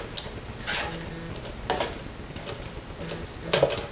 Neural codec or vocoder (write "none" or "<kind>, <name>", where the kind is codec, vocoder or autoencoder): none